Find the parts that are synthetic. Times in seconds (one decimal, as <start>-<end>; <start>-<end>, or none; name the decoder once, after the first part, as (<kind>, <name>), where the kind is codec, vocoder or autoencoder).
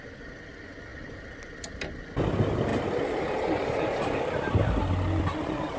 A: none